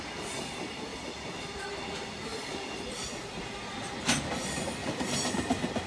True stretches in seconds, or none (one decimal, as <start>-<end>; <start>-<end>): 0.0-0.9; 1.6-2.3; 2.9-4.8